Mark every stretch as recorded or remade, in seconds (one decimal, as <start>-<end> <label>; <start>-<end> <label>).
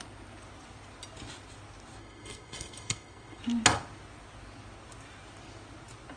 0.0-2.0 recorded; 2.0-3.4 remade; 3.4-6.2 recorded